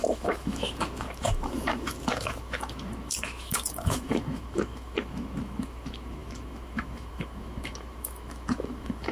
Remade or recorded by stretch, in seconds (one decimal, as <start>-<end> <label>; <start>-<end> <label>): 0.0-9.1 remade